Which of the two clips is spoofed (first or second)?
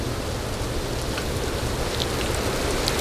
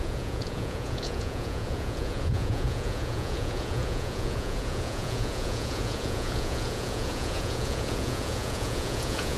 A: second